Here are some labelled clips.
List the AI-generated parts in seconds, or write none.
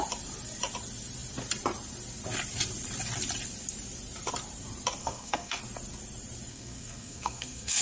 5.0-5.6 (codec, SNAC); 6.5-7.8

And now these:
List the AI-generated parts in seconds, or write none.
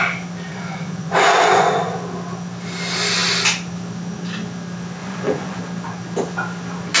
0.5-1.8 (vocoder, Vocos); 5.0-5.6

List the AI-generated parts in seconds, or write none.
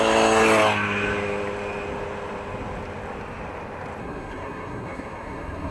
4.0-5.7 (codec, SNAC)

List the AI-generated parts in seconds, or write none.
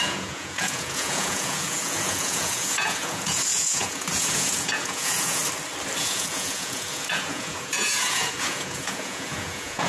0.0-5.4 (vocoder, Vocos); 6.0-9.9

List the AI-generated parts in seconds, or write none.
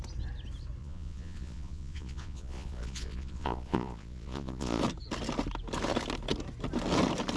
0.8-4.8 (vocoder, Vocos)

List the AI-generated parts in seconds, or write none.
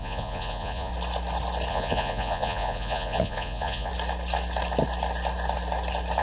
0.0-0.9 (vocoder, Vocos); 1.7-3.9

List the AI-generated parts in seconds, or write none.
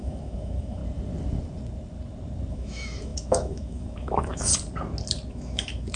0.0-0.8 (autoencoder, DAC-VAE); 2.5-4.5; 5.3-6.0